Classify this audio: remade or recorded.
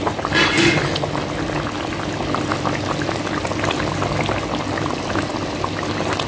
recorded